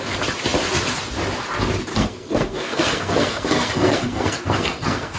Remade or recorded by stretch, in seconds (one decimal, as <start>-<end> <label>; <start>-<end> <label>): 0.0-1.9 recorded; 1.9-5.2 remade